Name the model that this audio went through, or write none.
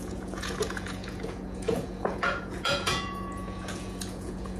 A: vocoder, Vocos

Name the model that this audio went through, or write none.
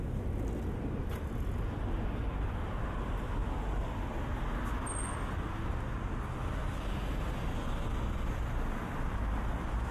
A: none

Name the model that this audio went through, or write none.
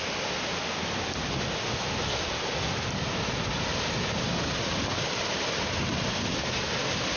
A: none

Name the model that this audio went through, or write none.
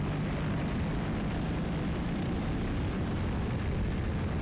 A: none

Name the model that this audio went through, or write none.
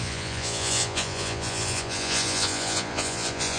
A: vocoder, Vocos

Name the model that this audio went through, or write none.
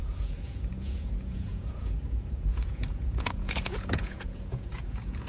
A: vocoder, Vocos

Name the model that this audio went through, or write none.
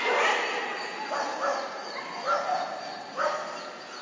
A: none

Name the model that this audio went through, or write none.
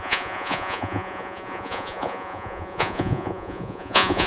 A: vocoder, Vocos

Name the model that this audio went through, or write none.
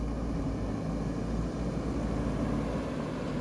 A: none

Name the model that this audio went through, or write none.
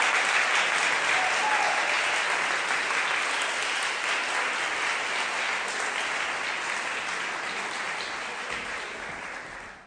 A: none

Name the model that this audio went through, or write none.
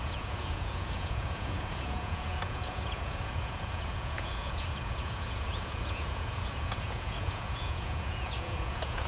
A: vocoder, Vocos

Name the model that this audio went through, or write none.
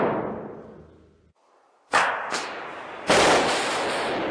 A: none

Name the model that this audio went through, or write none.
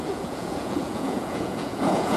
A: vocoder, Vocos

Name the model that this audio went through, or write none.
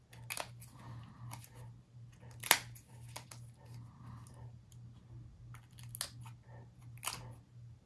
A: none